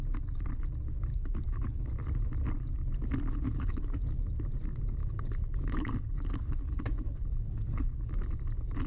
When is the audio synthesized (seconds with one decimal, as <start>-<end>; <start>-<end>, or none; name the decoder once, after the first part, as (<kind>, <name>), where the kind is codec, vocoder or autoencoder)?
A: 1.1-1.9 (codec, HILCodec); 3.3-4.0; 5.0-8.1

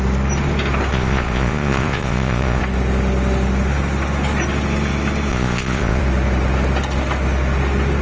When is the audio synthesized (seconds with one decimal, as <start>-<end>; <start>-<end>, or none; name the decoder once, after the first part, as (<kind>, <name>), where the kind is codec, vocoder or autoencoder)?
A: 0.9-2.6 (vocoder, Vocos); 5.3-6.0

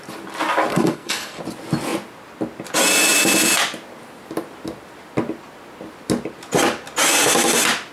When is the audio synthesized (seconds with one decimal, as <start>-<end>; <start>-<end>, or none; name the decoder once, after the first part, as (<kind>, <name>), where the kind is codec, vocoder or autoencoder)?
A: 0.7-1.4 (codec, SNAC)

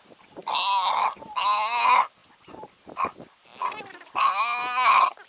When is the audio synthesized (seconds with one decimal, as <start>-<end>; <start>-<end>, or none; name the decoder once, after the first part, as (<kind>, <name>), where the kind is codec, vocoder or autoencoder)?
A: none